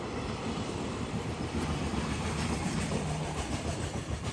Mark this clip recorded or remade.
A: remade